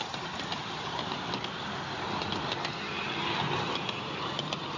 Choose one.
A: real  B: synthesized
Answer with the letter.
A